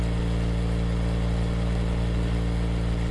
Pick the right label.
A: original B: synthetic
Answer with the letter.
A